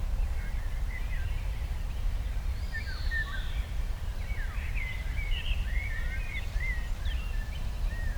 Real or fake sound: fake